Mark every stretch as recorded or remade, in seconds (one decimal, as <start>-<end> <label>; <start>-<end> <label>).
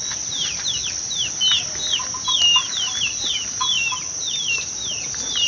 0.0-1.5 recorded; 1.5-4.8 remade; 4.8-5.5 recorded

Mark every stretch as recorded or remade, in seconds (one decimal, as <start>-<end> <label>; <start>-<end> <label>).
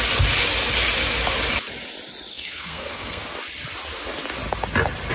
0.0-2.3 recorded; 2.3-3.2 remade; 3.2-5.1 recorded